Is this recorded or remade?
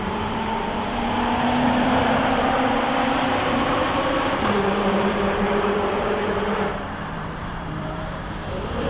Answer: remade